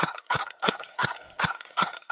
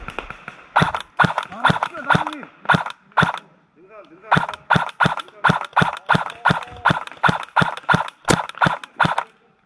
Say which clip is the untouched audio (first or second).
second